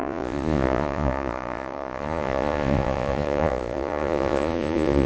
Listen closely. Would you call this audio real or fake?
fake